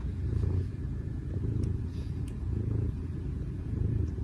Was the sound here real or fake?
fake